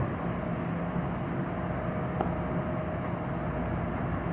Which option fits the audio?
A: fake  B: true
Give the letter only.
B